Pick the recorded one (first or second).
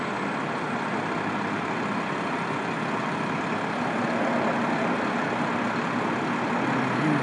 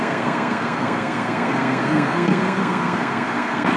first